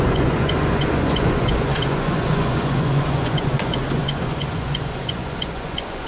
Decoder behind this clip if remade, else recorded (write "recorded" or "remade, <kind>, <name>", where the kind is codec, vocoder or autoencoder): remade, vocoder, Vocos